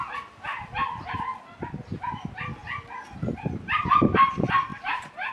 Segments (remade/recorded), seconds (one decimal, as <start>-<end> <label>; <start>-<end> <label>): 0.0-2.6 recorded; 2.6-3.8 remade; 3.8-4.7 recorded; 4.7-5.3 remade